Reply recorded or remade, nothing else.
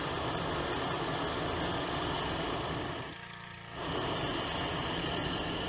recorded